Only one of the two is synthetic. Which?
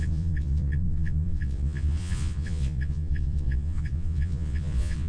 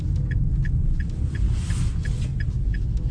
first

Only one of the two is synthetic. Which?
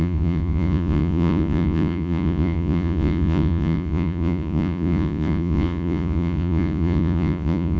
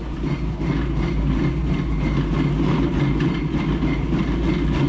first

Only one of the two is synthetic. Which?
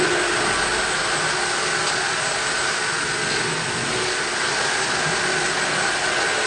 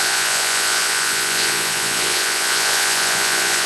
second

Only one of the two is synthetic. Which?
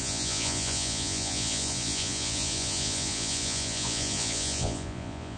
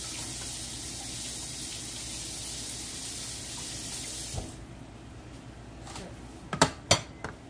first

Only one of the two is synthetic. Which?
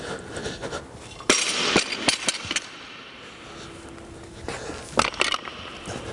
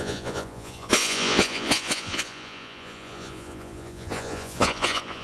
second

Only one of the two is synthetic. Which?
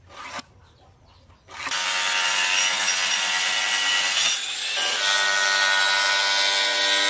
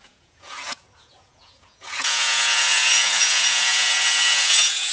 second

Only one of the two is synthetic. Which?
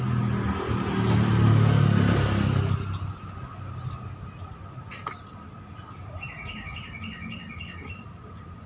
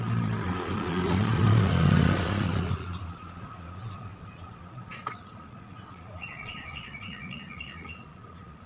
second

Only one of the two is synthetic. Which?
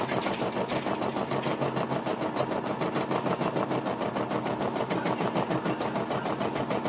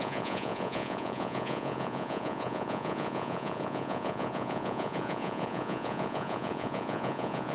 second